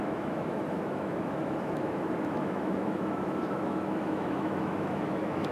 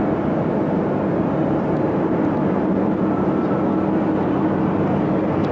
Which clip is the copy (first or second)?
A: first